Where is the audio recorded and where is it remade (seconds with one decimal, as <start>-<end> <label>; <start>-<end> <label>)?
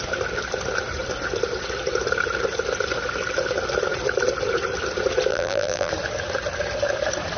0.0-5.3 recorded; 5.3-5.9 remade; 5.9-7.4 recorded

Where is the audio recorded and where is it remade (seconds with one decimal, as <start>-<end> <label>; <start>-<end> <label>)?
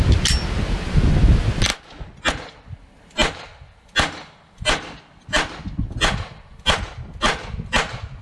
0.0-8.2 recorded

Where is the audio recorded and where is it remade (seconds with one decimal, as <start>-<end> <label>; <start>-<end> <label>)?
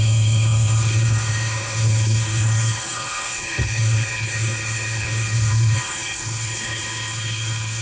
0.0-7.8 remade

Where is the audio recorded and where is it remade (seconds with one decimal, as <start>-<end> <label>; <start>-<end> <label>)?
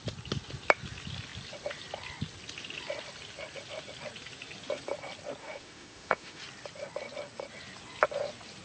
0.0-5.4 recorded; 5.4-6.4 remade; 6.4-8.6 recorded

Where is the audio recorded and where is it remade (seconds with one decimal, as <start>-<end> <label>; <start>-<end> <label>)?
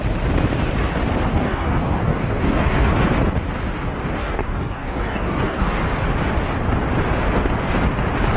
0.0-1.3 recorded; 1.3-2.9 remade; 2.9-4.2 recorded; 4.2-5.8 remade; 5.8-8.4 recorded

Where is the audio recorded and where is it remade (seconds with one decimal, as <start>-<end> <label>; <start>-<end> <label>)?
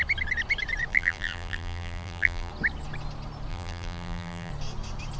0.0-0.9 recorded; 0.9-2.5 remade; 2.5-3.5 recorded; 3.5-4.5 remade; 4.5-5.2 recorded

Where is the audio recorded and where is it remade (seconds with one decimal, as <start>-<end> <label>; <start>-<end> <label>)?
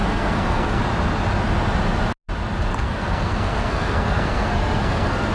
0.0-0.8 remade; 0.8-2.7 recorded; 2.7-5.3 remade